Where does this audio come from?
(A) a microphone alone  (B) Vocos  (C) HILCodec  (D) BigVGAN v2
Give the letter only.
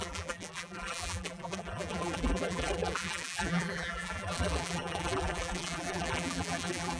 D